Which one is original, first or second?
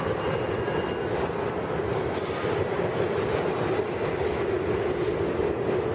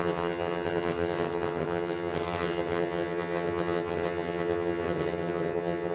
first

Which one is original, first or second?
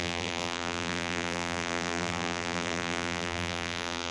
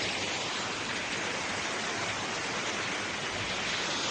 second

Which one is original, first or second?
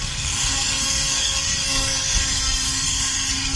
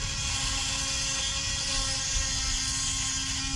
second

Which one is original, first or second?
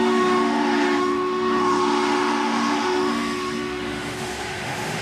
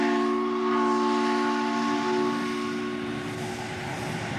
second